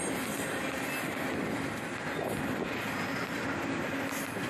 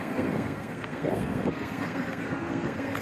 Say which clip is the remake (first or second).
second